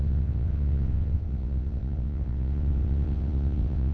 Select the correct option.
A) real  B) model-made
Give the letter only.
B